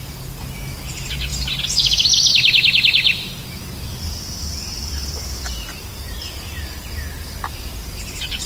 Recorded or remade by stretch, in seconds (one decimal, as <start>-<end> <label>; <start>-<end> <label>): 0.0-8.5 recorded